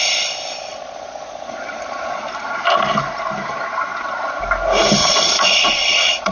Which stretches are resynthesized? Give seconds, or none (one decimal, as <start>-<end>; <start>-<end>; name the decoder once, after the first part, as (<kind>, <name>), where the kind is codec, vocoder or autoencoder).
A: 0.7-2.2 (vocoder, Vocos); 5.0-6.3